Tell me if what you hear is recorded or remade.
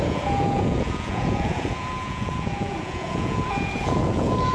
remade